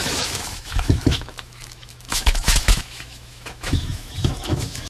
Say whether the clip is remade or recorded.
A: remade